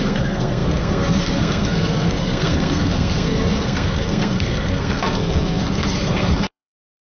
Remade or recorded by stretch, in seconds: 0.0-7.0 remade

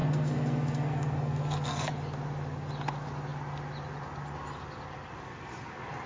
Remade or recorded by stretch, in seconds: 0.0-1.9 remade; 1.9-6.1 recorded

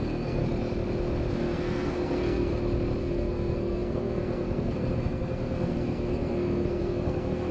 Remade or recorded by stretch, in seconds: 0.0-0.4 remade; 0.4-1.3 recorded; 1.3-2.5 remade; 2.5-3.0 recorded; 3.0-7.5 remade

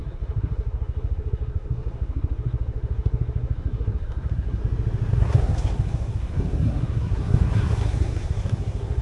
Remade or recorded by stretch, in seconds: 0.0-4.6 remade; 4.6-5.1 recorded; 5.1-9.0 remade

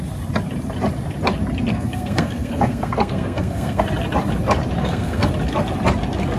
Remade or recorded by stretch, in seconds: 0.0-1.7 recorded; 1.7-3.8 remade; 3.8-4.8 recorded; 4.8-5.3 remade; 5.3-6.4 recorded